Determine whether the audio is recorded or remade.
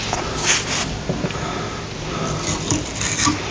recorded